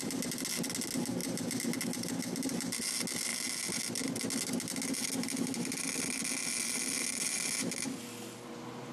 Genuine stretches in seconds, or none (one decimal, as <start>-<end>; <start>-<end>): 0.0-8.9